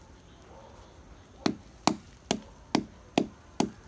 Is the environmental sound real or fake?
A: real